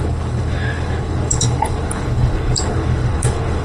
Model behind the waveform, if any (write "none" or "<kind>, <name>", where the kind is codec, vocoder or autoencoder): codec, HILCodec